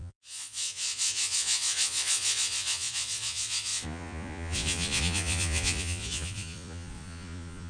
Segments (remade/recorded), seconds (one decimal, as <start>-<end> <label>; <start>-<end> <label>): 0.0-7.7 remade